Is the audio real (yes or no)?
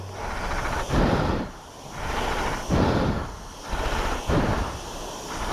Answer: yes